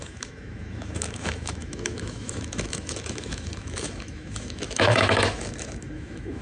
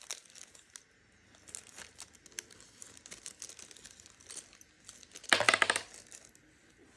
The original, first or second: second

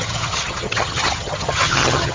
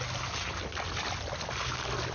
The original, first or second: second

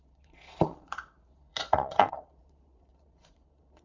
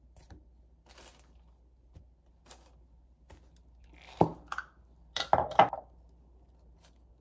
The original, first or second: second